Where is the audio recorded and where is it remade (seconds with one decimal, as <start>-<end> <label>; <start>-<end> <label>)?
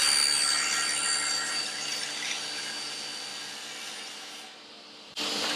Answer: 0.0-5.6 recorded